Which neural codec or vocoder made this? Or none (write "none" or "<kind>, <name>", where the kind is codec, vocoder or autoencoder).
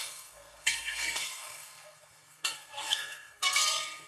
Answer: codec, SNAC